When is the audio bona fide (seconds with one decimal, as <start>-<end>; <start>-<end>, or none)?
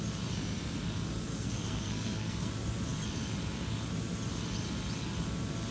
0.0-1.3; 2.5-5.7